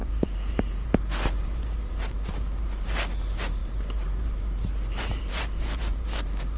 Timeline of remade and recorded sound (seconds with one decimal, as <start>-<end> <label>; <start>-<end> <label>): 0.0-6.6 remade